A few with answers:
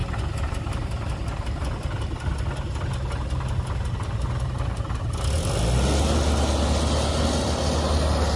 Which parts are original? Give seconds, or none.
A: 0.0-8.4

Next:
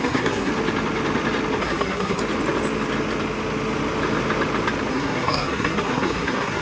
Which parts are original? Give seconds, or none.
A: 0.5-1.6; 2.2-4.9

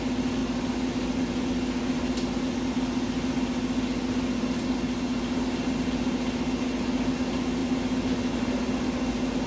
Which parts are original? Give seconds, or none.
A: 0.0-9.5

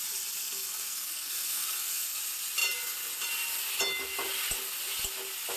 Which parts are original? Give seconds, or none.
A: 0.0-0.4; 2.2-5.6

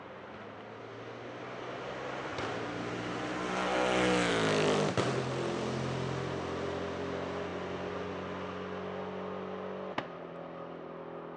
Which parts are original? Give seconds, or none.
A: 0.0-11.4

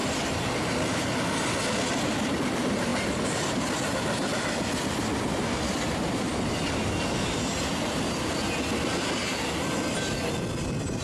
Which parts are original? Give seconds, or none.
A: 0.0-11.0

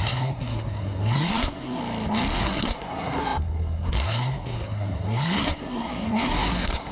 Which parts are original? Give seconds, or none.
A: 1.8-2.4

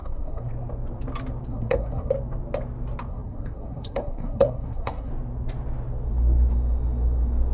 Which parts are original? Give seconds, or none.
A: 0.5-1.5; 2.1-3.1; 5.1-7.5